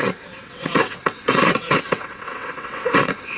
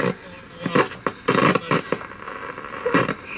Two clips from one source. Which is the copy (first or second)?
first